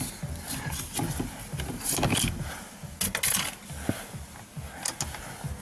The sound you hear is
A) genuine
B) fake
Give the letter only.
A